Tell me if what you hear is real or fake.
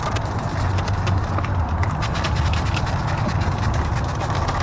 real